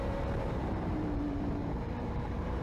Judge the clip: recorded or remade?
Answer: remade